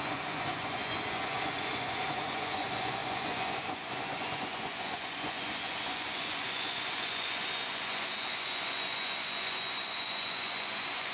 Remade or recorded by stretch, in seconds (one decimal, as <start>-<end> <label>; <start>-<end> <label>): 0.0-11.1 remade